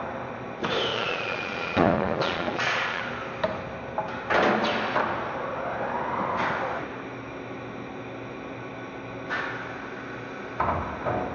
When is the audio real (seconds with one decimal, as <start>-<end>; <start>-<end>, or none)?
0.0-0.9; 3.0-11.3